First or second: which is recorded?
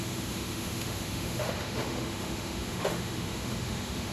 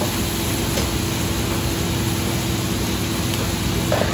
second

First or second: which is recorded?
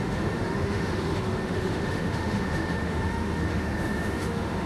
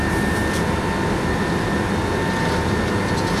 second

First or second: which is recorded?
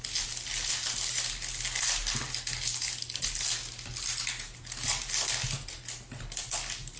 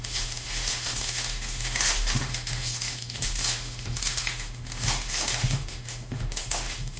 first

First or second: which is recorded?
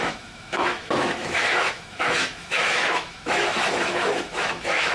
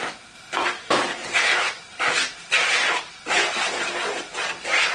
second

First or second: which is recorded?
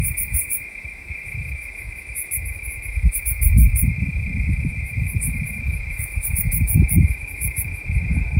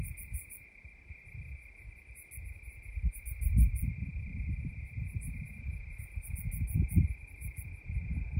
second